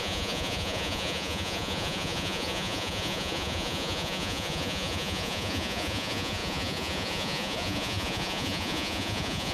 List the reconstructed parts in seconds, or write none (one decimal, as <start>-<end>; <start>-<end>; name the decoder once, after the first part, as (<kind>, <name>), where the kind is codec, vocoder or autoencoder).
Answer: 0.0-9.5 (vocoder, Vocos)